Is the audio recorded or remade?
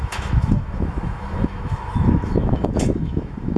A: remade